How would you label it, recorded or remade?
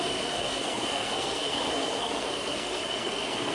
remade